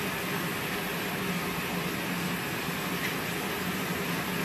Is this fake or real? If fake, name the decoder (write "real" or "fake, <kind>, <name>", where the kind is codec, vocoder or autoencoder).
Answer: real